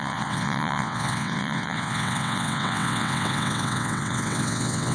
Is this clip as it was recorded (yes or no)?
no